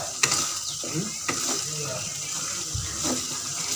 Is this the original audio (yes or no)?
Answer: yes